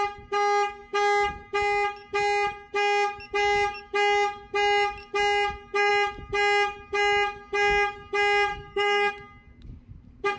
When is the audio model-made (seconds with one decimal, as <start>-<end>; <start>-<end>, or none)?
8.5-9.1